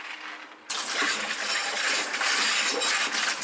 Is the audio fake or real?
real